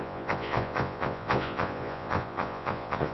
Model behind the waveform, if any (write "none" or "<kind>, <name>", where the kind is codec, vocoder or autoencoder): vocoder, Vocos